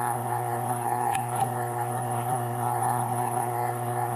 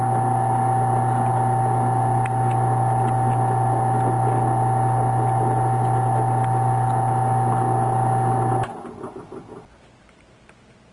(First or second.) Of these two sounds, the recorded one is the second